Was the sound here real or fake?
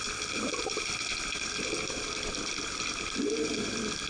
fake